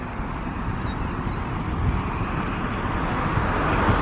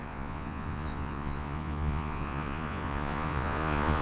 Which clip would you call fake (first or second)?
second